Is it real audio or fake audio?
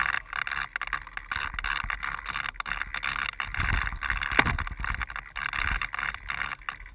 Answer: real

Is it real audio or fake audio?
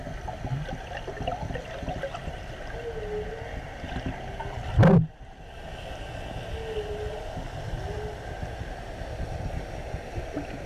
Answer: real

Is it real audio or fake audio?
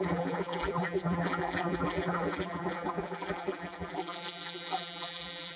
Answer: fake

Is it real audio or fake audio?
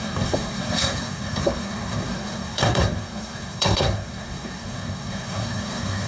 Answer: fake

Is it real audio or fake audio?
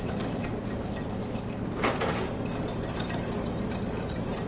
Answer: real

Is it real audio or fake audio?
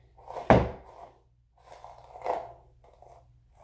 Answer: real